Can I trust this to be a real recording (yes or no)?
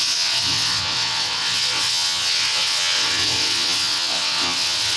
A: no